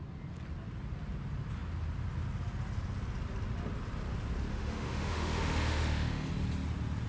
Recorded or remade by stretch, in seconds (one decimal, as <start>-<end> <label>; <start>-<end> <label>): 0.0-4.5 recorded; 4.5-6.3 remade; 6.3-7.1 recorded